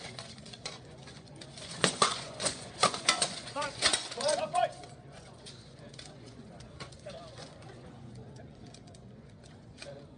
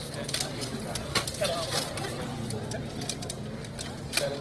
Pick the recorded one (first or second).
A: second